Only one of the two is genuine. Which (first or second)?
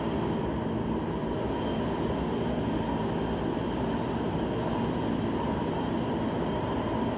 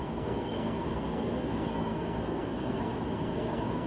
first